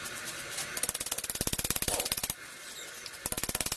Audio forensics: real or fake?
real